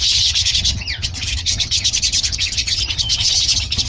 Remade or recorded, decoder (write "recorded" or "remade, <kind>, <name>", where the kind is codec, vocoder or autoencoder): remade, vocoder, HiFi-GAN